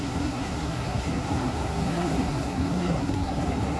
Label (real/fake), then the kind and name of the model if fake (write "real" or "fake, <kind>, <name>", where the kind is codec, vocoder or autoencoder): fake, codec, SNAC